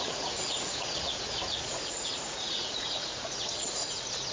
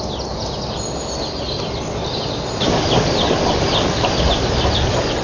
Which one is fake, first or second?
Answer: first